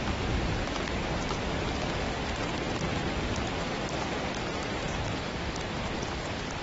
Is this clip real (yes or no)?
yes